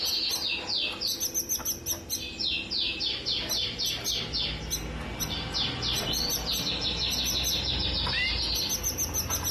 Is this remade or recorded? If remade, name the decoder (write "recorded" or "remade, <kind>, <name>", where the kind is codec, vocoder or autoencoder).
recorded